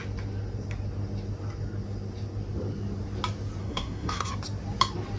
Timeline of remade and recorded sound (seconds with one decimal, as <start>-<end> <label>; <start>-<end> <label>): 0.0-3.6 recorded; 3.6-4.3 remade; 4.3-5.2 recorded